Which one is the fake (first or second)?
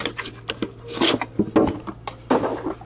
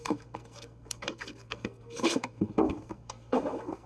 second